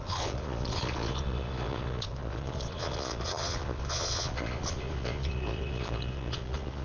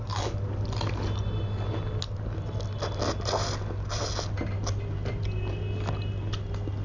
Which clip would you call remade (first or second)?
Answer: first